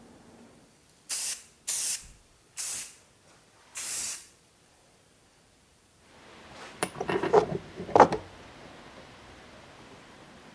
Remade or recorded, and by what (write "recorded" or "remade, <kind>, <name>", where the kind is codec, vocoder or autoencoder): remade, vocoder, BigVGAN v2